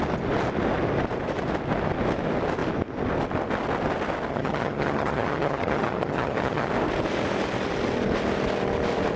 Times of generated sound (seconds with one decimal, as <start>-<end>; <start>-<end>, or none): 4.3-6.7